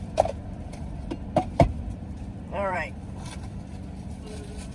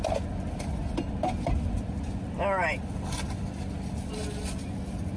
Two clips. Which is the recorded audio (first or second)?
second